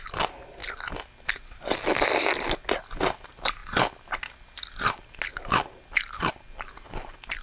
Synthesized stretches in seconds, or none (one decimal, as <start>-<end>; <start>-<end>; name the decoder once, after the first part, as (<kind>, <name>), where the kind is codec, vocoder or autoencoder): none